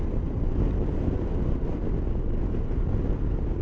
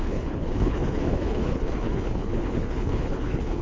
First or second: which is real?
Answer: first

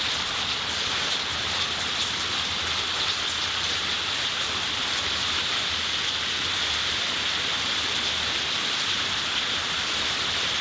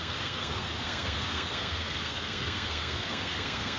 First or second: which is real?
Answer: first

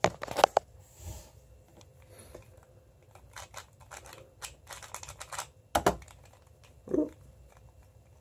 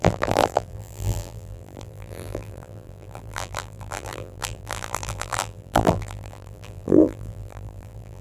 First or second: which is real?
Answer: first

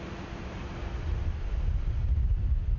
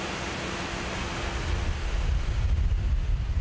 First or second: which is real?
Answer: second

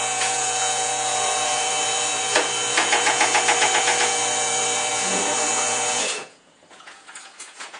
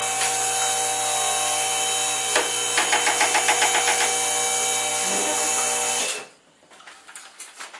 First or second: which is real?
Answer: second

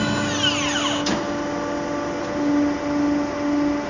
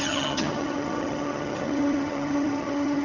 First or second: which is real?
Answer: first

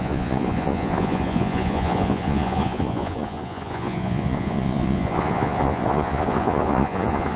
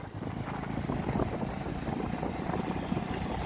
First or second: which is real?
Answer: second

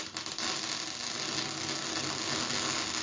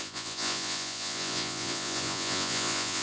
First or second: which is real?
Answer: first